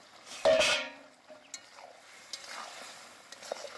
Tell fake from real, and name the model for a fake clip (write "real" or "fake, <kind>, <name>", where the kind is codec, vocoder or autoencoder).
real